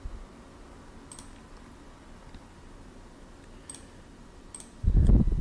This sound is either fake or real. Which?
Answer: real